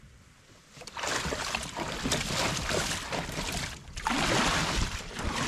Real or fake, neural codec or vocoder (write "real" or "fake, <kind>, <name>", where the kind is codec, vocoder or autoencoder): real